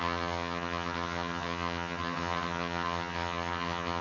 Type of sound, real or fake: fake